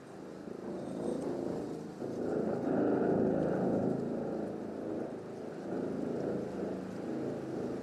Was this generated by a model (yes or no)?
no